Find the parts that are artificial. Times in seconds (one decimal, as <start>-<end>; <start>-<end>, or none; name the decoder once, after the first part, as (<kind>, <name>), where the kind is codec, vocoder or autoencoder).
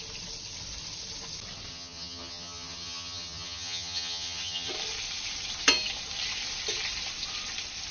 1.7-4.7 (vocoder, HiFi-GAN)